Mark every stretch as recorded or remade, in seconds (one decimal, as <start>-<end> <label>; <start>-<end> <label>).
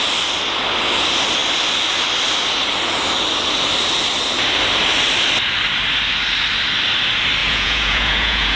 0.0-7.4 recorded; 7.4-8.6 remade